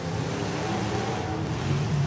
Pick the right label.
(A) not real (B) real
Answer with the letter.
B